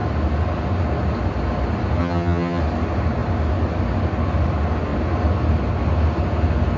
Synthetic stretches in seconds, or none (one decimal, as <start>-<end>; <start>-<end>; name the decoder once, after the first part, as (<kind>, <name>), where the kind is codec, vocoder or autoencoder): 2.0-2.6 (vocoder, HiFi-GAN)